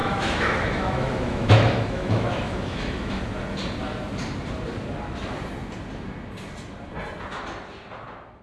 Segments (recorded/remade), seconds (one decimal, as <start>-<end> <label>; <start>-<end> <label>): 0.0-3.2 remade; 3.2-8.4 recorded